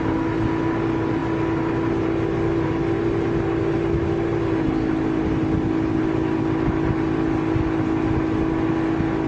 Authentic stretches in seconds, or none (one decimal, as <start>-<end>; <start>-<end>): 0.0-9.3